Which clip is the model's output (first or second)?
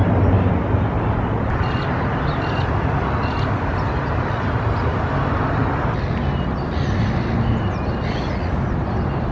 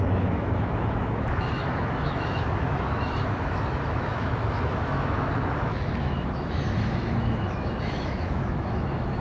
second